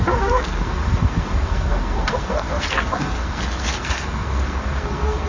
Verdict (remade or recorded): remade